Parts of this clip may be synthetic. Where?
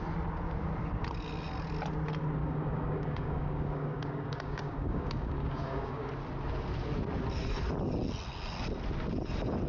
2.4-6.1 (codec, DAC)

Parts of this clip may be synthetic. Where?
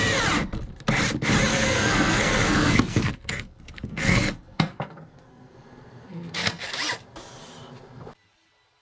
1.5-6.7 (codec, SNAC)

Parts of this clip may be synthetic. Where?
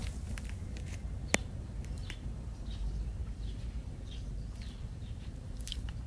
1.4-6.1 (vocoder, BigVGAN v2)